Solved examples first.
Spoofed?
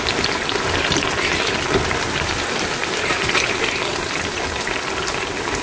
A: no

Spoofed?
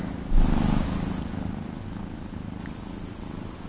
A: no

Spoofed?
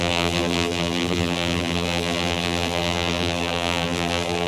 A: yes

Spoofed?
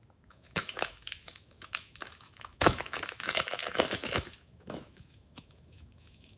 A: yes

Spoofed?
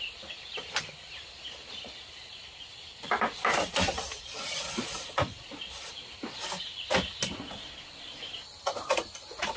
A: no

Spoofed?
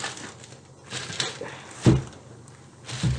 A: no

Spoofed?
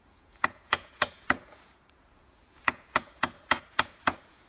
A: yes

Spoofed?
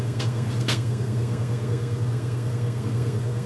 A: yes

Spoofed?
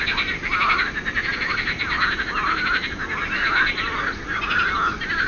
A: no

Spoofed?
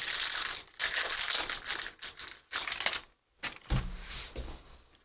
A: no